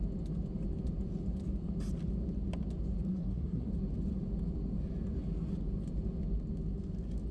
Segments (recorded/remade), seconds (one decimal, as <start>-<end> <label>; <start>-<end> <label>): 0.0-3.1 recorded; 3.1-3.7 remade; 3.7-7.3 recorded